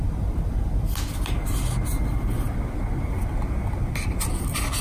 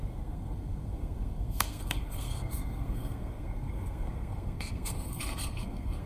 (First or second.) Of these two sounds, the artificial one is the second